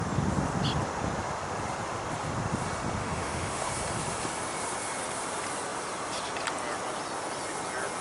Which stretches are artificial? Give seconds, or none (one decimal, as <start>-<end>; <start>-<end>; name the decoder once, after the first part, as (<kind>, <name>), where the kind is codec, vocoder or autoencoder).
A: 3.0-3.7 (autoencoder, DAC-VAE)